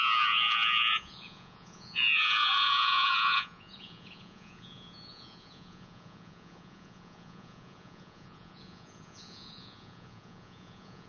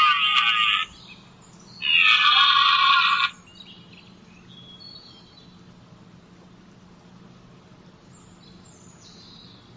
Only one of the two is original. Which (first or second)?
second